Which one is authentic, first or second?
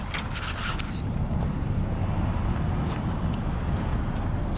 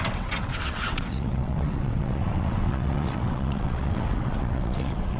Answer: first